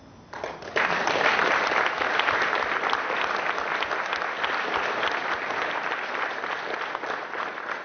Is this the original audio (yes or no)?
yes